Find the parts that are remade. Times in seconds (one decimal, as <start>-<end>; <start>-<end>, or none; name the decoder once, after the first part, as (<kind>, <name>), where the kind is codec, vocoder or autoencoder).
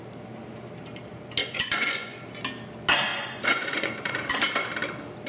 1.4-2.2 (vocoder, Vocos); 3.1-4.4